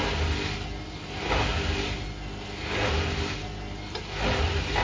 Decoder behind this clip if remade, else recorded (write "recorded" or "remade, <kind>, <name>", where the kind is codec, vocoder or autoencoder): recorded